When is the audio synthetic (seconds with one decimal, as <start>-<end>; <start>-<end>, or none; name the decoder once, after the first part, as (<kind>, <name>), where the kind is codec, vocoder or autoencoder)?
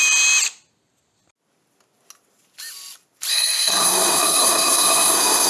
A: 3.3-5.5 (codec, SNAC)